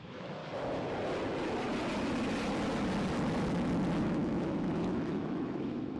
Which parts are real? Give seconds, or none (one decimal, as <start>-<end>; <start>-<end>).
0.4-4.0